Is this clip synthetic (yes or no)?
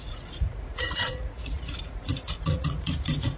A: yes